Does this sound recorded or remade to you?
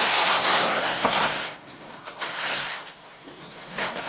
remade